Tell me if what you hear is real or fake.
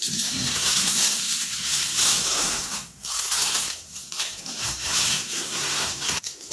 fake